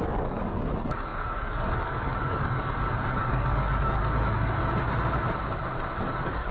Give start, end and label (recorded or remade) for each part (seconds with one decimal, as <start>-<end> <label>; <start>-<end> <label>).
0.0-4.6 remade; 4.6-6.0 recorded; 6.0-6.5 remade